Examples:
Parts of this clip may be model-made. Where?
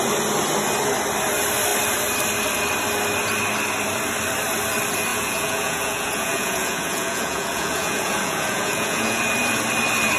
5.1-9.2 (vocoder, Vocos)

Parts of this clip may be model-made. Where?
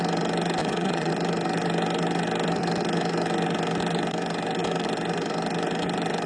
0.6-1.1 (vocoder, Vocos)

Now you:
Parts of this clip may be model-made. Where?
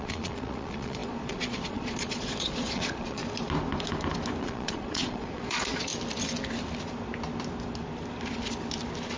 0.0-3.2 (vocoder, Vocos); 4.4-5.9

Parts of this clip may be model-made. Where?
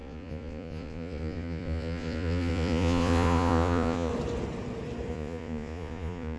0.0-4.1 (vocoder, Vocos); 5.1-6.4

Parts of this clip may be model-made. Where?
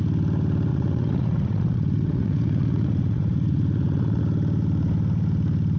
0.7-4.2 (vocoder, Vocos)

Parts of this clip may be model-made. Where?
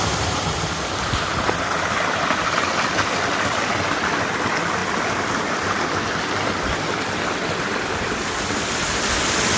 none